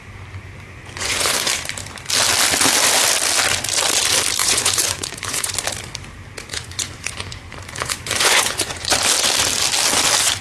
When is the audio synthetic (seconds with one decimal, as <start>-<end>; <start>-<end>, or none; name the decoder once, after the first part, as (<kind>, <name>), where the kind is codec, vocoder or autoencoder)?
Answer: 0.8-1.5 (vocoder, Vocos); 4.4-5.5; 6.5-9.0